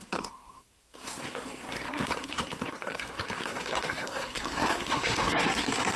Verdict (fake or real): fake